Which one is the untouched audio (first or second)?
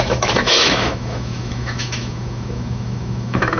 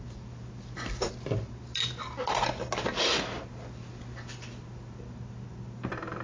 second